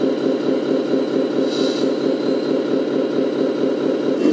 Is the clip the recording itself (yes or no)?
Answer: yes